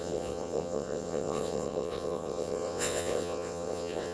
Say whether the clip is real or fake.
fake